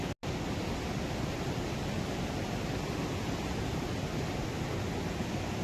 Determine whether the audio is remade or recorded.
recorded